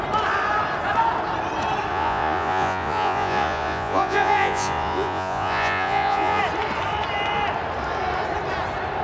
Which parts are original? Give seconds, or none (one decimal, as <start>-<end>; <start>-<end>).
0.0-1.9; 6.4-9.0

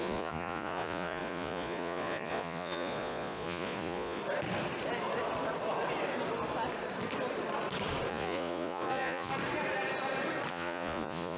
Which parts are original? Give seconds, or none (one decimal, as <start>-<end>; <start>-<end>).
4.2-8.1; 9.3-10.5

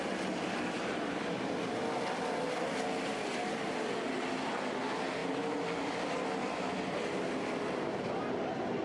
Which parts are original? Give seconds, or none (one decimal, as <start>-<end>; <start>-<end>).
0.0-8.8

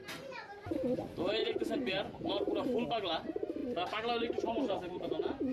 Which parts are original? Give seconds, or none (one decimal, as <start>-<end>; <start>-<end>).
0.0-1.4; 2.3-5.5

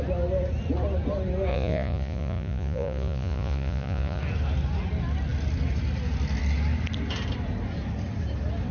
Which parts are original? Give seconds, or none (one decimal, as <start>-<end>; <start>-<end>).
0.0-1.5; 4.2-8.7

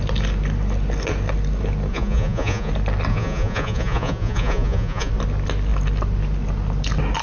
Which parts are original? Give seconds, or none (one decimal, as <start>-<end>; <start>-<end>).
0.0-1.9; 2.7-3.1; 5.1-7.2

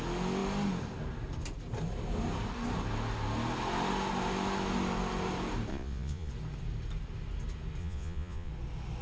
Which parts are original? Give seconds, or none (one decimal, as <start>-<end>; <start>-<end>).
0.0-5.7; 6.3-7.8; 8.5-9.0

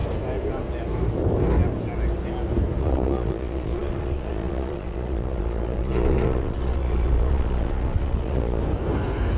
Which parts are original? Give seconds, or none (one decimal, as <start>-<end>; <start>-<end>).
0.0-2.8; 8.6-9.4